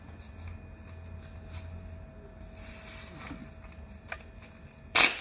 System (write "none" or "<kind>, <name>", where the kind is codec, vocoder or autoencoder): none